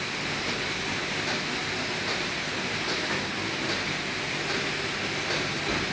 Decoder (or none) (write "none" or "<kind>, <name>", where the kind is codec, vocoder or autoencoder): none